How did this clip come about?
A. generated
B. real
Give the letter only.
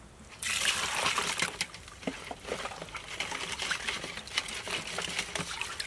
B